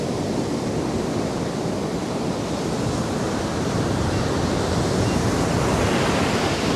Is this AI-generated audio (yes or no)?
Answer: yes